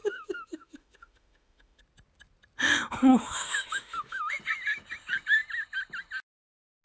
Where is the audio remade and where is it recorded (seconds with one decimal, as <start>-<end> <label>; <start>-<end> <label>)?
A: 0.0-1.8 remade; 1.8-3.1 recorded; 3.1-4.3 remade; 4.3-6.8 recorded